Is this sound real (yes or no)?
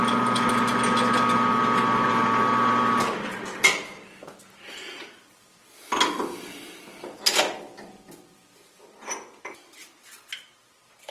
yes